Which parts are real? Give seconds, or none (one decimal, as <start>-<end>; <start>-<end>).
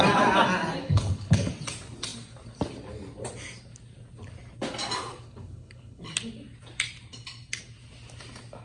0.0-0.8; 1.5-5.1; 6.1-8.6